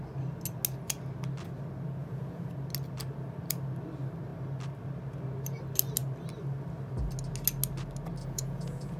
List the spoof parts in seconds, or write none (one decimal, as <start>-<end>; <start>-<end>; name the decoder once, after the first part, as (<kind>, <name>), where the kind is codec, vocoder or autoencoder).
2.0-2.5 (vocoder, Vocos); 8.2-9.0